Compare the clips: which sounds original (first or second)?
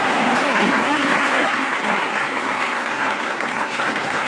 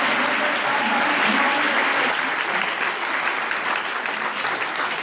second